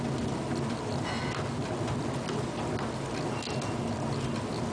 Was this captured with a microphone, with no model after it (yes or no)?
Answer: yes